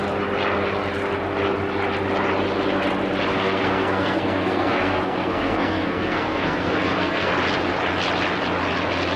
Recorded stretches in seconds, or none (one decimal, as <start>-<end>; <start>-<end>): 0.0-3.3; 7.3-9.2